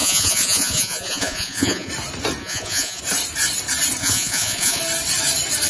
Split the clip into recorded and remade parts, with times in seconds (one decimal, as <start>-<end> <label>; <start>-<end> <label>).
0.0-1.9 remade; 1.9-2.4 recorded; 2.4-3.0 remade; 3.0-4.0 recorded; 4.0-4.8 remade; 4.8-5.7 recorded